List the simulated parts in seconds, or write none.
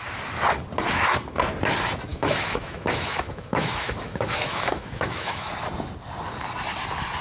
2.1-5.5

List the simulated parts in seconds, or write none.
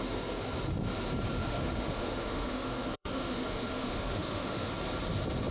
1.4-4.7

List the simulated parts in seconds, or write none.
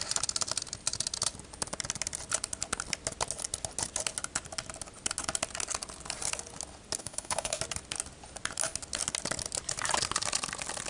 7.0-7.6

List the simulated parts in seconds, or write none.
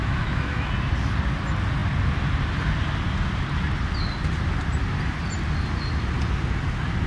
0.0-0.7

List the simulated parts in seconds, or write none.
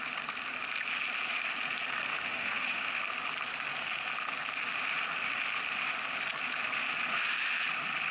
2.1-3.0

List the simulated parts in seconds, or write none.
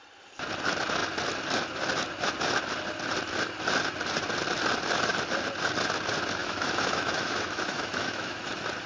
6.4-8.5